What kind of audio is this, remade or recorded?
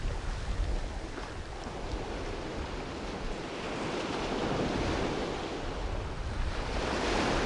recorded